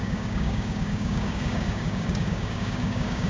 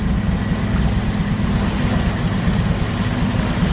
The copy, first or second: first